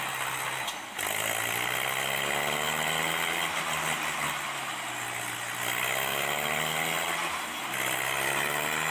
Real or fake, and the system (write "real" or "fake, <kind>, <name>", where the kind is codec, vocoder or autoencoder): real